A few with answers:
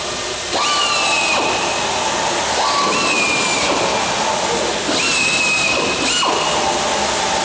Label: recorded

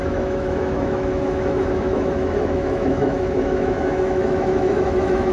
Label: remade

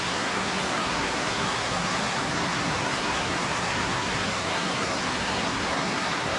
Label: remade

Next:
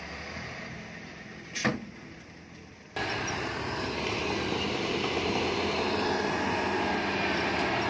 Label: recorded